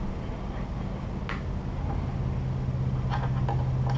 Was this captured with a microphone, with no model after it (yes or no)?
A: yes